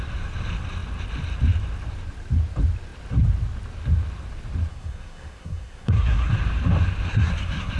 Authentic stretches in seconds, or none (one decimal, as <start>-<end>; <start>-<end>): 0.0-4.7; 6.3-7.1